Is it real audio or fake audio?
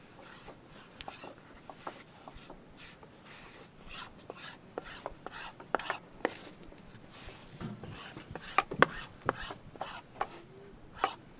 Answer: fake